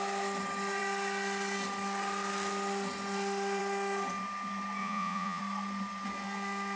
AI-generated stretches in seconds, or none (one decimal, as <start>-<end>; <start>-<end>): 4.8-5.4